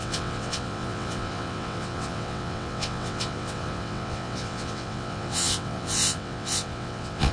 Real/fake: fake